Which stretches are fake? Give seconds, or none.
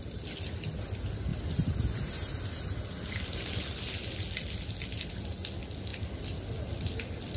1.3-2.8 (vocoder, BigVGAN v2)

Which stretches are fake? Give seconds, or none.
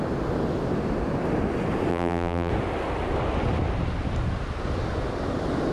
1.9-2.5 (vocoder, BigVGAN v2)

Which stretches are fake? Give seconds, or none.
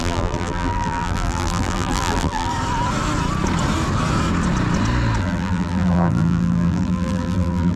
0.0-2.5 (vocoder, BigVGAN v2); 5.2-7.8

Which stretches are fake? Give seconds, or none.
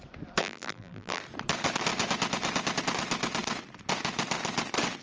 0.4-1.2 (vocoder, BigVGAN v2)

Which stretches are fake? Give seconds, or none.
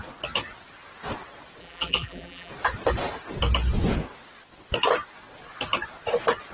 1.6-2.5 (vocoder, BigVGAN v2)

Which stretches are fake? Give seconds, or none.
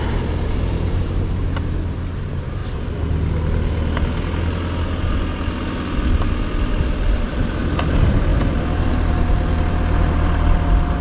0.0-2.6 (vocoder, BigVGAN v2); 7.2-11.0